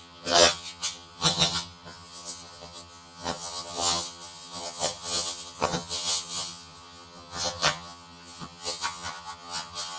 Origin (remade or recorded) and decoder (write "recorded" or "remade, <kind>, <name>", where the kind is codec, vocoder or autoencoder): remade, vocoder, HiFi-GAN